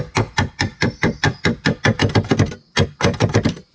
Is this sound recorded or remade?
recorded